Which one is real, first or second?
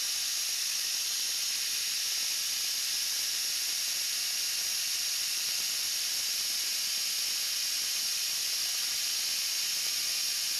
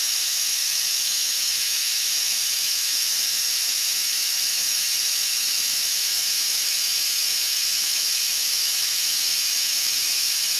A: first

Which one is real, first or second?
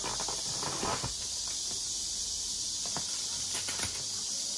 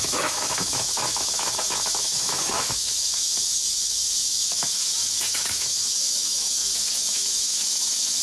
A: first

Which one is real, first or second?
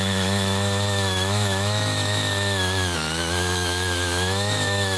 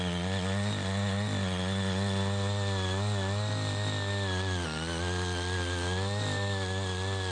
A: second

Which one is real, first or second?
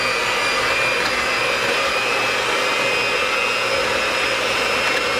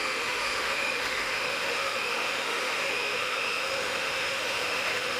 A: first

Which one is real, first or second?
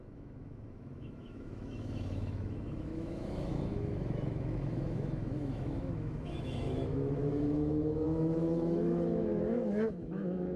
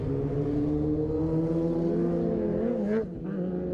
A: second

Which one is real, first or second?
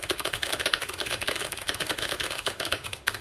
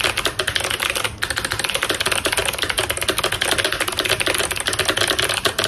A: second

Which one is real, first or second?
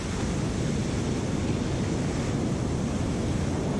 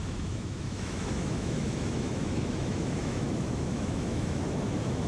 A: first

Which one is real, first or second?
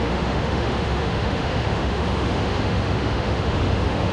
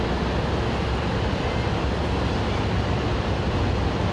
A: second